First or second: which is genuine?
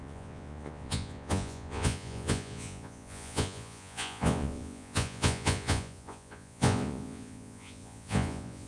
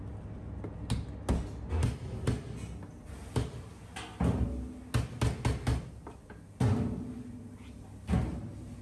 second